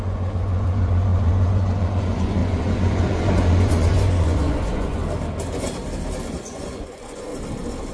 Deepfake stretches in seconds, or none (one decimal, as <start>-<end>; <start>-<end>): 0.0-5.0; 6.4-7.3